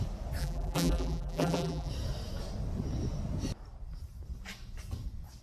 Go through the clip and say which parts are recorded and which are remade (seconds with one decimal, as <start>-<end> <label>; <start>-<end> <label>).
0.0-0.4 recorded; 0.4-1.9 remade; 1.9-5.4 recorded